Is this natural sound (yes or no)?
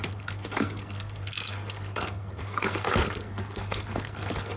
no